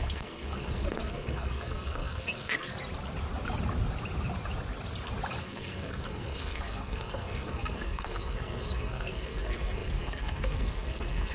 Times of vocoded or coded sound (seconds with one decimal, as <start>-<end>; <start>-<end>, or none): 0.0-2.7; 5.4-11.3